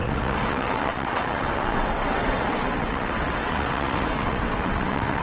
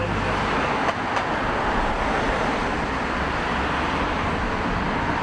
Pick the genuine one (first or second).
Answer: second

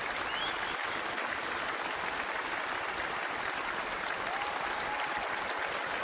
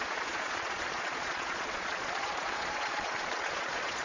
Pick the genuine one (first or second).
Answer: first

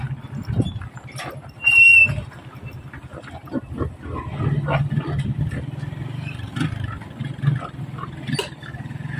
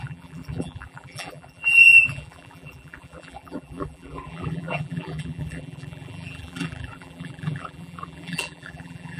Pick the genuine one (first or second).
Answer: first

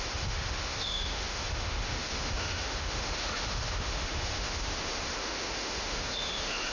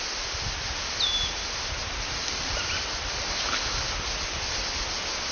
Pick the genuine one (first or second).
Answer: second